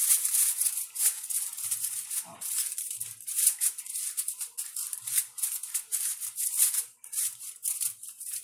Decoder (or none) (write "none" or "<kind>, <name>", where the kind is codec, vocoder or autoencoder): vocoder, BigVGAN v2